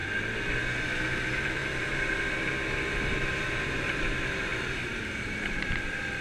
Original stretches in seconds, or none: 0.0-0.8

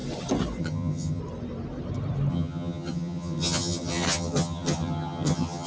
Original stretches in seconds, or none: 0.0-0.6; 1.2-2.3